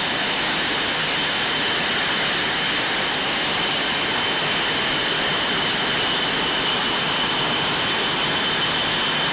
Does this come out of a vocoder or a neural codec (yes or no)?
no